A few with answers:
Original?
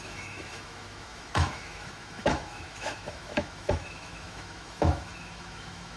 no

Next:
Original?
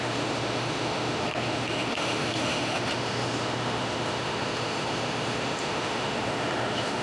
no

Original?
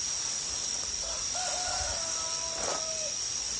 yes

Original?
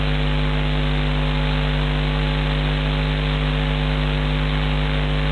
yes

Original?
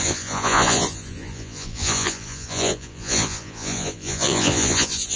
no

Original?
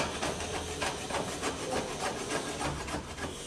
yes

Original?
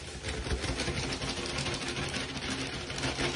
yes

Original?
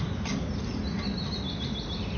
yes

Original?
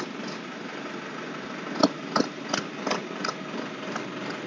yes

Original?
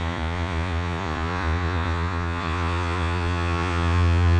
no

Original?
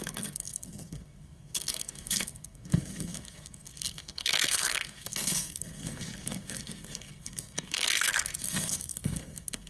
no